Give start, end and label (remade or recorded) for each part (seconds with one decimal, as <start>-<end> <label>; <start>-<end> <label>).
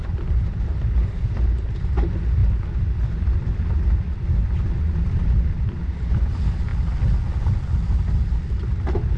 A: 0.0-9.2 recorded